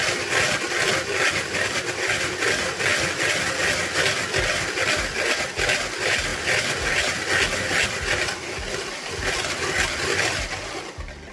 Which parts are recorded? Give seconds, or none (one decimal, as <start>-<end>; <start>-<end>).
0.0-11.3